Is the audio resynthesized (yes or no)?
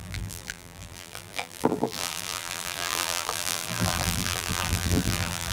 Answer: yes